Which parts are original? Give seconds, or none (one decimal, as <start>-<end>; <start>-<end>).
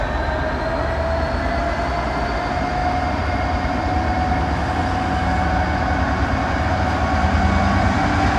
0.0-8.4